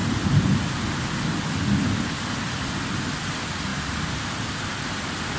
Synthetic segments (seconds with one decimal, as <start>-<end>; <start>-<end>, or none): none